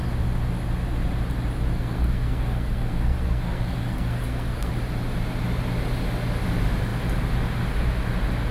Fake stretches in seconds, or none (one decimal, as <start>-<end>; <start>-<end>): 1.7-4.7

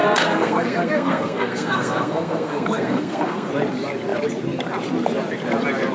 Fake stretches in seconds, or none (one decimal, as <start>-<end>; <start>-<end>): 0.0-3.5

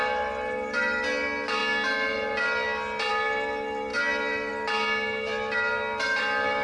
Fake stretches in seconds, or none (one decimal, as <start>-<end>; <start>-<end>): none